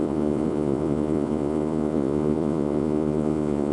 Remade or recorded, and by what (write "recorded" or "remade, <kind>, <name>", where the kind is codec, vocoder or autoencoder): remade, vocoder, Vocos